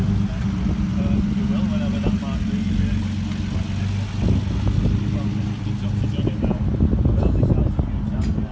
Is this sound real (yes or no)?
yes